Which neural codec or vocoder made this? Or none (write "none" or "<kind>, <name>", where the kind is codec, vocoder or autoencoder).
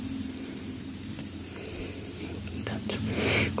vocoder, BigVGAN v2